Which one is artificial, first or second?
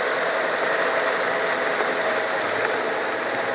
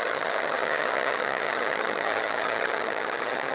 second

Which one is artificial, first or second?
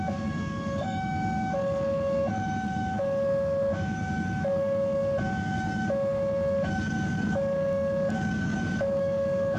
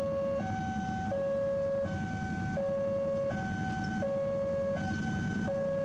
first